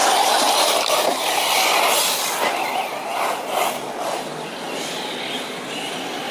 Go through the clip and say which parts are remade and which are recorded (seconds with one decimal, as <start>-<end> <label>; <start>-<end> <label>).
0.0-6.3 recorded